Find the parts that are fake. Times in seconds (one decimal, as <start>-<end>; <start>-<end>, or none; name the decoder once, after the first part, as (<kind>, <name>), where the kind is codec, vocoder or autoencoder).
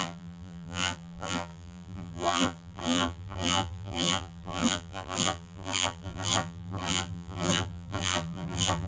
0.0-8.9 (vocoder, BigVGAN v2)